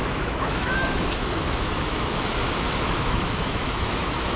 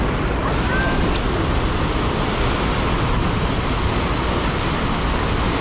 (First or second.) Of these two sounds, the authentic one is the second